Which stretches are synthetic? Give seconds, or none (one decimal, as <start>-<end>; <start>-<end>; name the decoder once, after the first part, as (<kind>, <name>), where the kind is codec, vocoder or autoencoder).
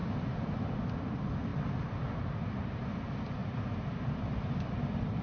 0.7-1.5 (vocoder, BigVGAN v2); 2.1-3.4; 3.9-5.2